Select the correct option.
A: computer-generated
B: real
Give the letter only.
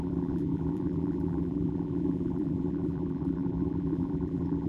A